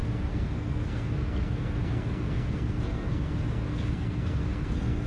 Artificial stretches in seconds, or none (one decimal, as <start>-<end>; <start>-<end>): 0.0-5.1